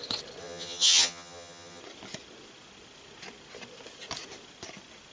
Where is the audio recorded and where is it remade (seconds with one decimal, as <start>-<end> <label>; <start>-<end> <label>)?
0.0-0.4 recorded; 0.4-1.8 remade; 1.8-5.1 recorded